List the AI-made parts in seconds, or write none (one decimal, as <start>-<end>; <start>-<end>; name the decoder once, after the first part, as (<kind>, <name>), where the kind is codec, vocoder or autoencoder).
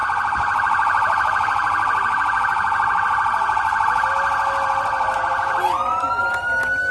0.0-4.1 (vocoder, BigVGAN v2)